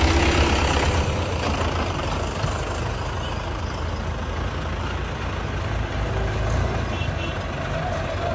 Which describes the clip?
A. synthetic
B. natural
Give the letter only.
B